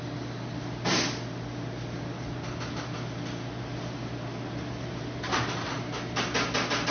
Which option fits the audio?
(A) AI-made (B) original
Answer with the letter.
B